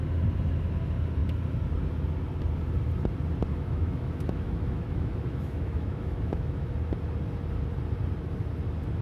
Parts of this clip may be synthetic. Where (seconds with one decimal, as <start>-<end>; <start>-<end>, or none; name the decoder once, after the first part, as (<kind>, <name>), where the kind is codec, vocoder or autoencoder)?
3.5-6.7 (autoencoder, DAC-VAE)